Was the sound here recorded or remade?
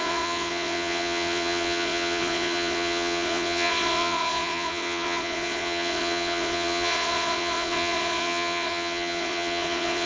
remade